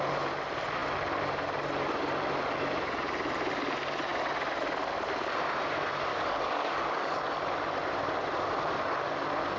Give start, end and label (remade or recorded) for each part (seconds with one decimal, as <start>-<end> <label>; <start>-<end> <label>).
0.0-6.1 recorded; 6.1-7.2 remade; 7.2-9.6 recorded